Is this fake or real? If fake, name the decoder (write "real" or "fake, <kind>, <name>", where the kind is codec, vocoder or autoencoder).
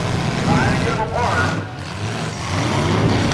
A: real